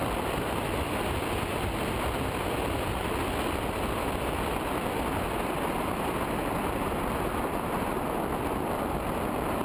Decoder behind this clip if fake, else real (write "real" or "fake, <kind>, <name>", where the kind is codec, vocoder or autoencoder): real